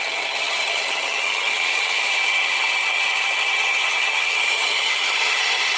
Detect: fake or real fake